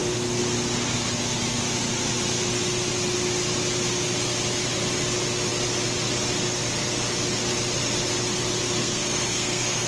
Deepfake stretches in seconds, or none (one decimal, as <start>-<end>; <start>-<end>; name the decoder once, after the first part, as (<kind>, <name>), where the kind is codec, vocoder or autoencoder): 8.8-9.9 (codec, SNAC)